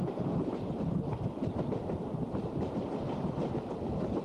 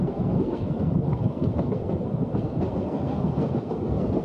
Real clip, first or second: first